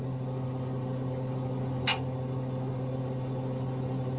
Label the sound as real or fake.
real